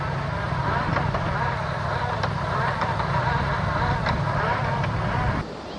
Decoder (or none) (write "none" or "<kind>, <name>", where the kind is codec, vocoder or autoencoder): vocoder, BigVGAN v2